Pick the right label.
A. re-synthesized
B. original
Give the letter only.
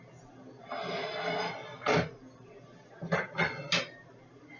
B